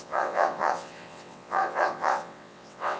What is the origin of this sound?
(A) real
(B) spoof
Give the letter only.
B